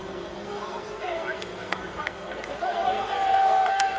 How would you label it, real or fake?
fake